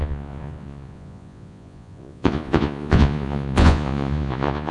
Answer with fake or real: fake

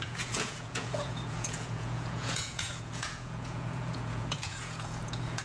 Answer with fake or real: fake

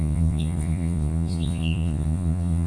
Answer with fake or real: fake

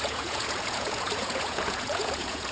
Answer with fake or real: fake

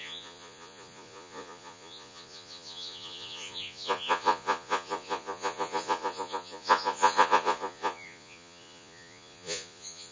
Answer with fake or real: fake